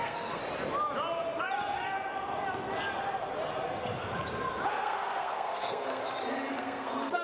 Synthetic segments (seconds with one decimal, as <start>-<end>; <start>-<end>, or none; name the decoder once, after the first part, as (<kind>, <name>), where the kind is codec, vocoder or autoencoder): 0.0-0.4 (codec, SNAC); 4.7-6.0; 6.5-7.2